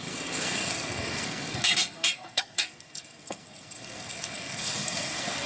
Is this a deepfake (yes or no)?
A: yes